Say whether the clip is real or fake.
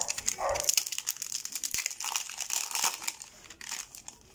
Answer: real